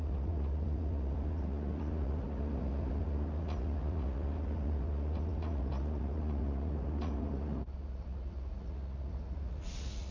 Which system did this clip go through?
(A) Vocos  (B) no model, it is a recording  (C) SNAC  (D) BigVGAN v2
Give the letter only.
A